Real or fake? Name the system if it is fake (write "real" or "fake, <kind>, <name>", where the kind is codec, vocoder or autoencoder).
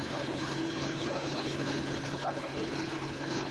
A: fake, codec, HILCodec